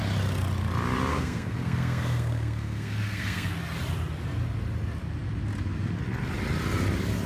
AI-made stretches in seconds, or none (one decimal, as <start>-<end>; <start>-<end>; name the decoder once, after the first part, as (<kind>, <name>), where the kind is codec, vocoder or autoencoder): 1.1-3.5 (codec, SNAC)